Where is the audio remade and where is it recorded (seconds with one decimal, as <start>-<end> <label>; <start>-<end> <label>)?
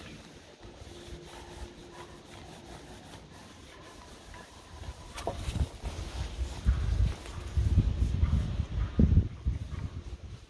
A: 0.0-10.5 recorded